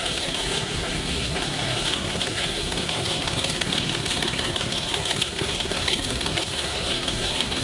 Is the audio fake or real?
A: fake